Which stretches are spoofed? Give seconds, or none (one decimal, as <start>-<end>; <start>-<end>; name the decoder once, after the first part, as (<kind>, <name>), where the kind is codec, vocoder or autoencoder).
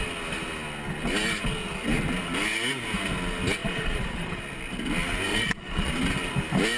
3.6-4.4 (vocoder, Vocos); 5.3-5.9